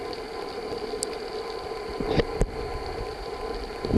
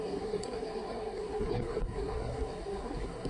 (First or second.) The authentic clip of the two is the first